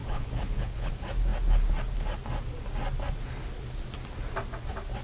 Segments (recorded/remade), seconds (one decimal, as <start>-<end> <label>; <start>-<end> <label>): 0.0-0.9 remade; 0.9-5.0 recorded